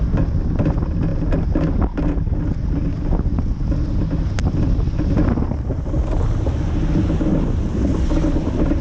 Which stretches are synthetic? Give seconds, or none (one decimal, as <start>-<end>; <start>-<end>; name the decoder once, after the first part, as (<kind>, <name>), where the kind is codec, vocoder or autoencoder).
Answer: none